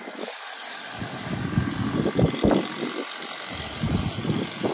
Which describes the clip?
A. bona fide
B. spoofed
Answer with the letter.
A